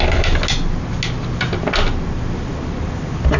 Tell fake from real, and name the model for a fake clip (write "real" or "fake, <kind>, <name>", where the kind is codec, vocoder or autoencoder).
real